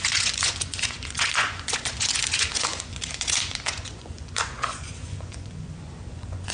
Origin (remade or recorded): remade